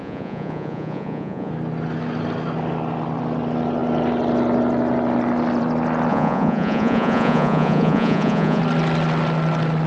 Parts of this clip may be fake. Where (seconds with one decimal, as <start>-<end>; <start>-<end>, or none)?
0.0-1.5; 6.1-8.6